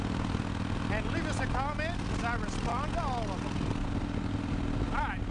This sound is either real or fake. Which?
real